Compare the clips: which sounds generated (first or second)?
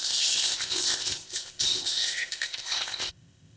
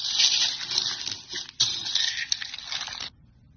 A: first